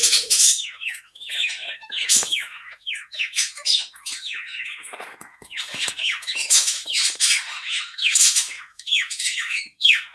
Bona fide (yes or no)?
no